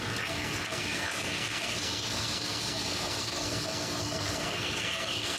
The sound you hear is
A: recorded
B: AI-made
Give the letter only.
B